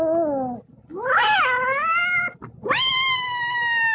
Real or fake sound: real